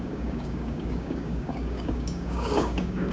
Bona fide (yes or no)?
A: no